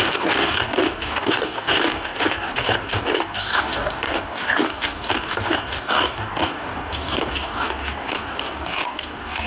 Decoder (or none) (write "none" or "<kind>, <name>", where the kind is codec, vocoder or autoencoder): codec, DAC